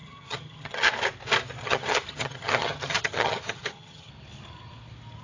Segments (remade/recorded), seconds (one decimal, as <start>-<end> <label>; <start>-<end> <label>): 0.0-0.9 remade; 0.9-1.6 recorded; 1.6-4.1 remade; 4.1-5.2 recorded